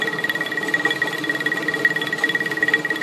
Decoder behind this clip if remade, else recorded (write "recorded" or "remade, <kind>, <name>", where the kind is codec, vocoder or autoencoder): recorded